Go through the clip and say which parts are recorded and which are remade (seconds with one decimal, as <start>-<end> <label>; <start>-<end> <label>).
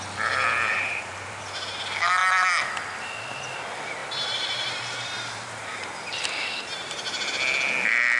0.0-0.7 recorded; 0.7-1.4 remade; 1.4-4.0 recorded; 4.0-6.9 remade; 6.9-8.2 recorded